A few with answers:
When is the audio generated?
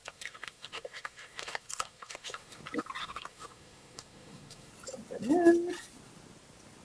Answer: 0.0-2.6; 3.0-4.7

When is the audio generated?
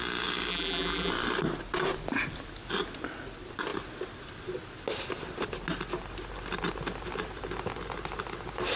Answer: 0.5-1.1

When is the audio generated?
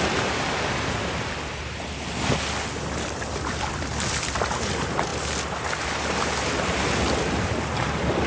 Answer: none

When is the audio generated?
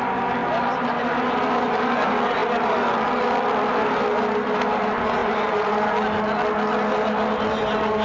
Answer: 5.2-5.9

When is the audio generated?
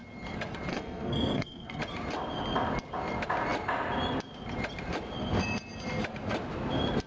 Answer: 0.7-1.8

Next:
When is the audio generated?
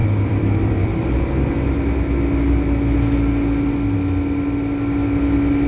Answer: 0.0-1.2